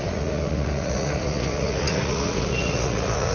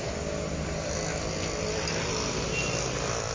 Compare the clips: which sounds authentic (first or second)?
second